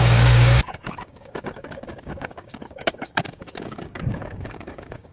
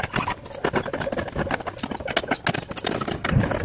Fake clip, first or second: first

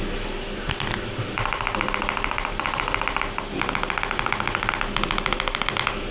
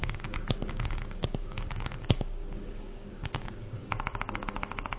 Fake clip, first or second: second